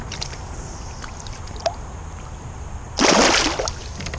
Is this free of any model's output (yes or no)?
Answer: yes